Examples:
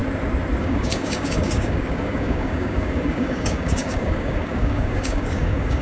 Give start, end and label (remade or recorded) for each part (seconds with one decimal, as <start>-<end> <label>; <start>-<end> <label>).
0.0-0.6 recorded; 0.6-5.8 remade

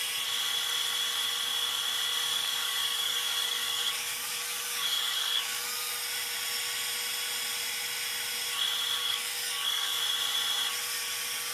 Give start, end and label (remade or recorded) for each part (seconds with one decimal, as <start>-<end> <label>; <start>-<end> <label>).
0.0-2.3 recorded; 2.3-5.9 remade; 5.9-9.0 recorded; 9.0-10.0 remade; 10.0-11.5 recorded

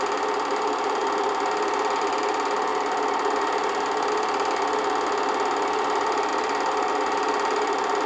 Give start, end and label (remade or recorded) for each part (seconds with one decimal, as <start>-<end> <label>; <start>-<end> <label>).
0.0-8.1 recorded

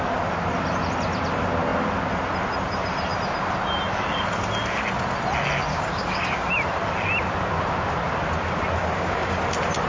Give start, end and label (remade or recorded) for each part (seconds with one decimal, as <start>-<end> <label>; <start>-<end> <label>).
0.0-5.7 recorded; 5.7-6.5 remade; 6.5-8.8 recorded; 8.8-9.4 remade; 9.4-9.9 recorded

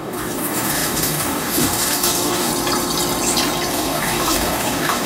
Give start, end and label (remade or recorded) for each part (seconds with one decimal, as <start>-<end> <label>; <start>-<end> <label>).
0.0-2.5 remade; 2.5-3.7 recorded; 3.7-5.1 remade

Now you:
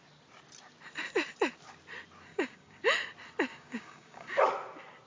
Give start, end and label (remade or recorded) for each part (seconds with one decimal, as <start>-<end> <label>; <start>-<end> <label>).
0.0-2.3 recorded; 2.3-2.8 remade; 2.8-3.5 recorded; 3.5-4.4 remade; 4.4-5.1 recorded

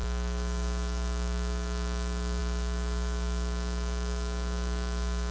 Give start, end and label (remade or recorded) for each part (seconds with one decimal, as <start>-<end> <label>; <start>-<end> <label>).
0.0-5.3 remade

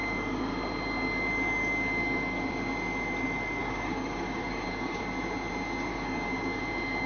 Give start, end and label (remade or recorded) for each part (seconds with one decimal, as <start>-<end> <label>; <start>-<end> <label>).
0.0-3.6 recorded; 3.6-5.0 remade; 5.0-5.9 recorded; 5.9-6.6 remade; 6.6-7.1 recorded